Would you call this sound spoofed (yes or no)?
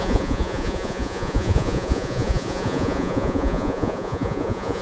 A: yes